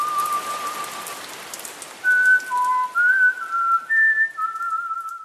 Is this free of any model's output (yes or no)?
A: yes